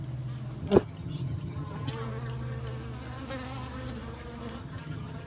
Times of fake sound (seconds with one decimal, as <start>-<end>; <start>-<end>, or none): 0.6-1.9; 4.6-5.3